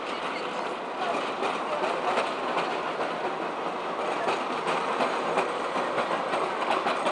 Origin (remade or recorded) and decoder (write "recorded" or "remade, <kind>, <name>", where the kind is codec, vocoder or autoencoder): recorded